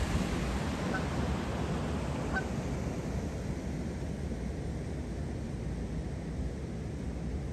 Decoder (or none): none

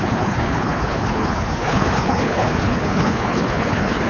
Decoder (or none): codec, HILCodec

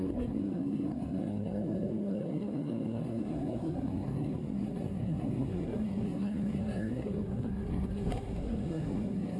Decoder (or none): codec, SNAC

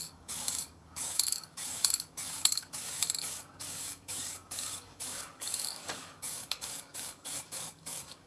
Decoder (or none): codec, DAC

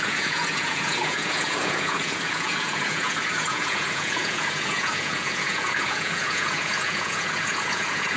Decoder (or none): vocoder, Vocos